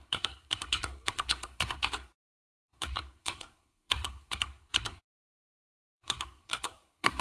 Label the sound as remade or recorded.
remade